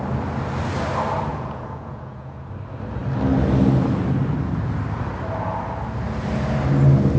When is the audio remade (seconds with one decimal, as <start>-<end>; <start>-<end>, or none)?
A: 1.3-2.5